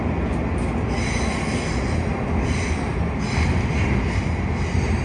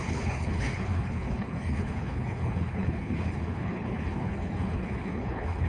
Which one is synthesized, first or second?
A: second